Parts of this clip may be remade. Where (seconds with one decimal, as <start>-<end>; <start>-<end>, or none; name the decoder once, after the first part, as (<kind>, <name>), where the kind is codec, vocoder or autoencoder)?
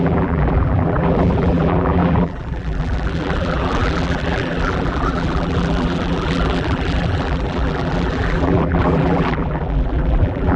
0.0-10.6 (vocoder, BigVGAN v2)